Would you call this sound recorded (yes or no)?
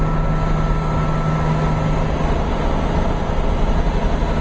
yes